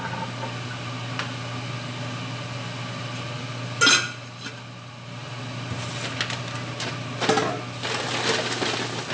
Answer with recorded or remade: recorded